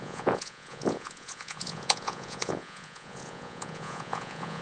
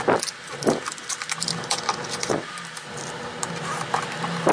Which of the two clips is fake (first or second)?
first